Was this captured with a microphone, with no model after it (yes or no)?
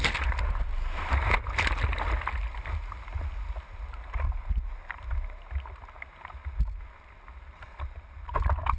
yes